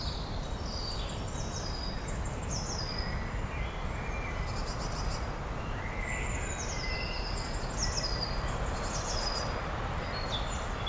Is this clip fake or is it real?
real